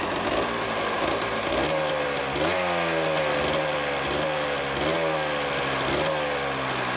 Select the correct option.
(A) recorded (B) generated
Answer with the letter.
A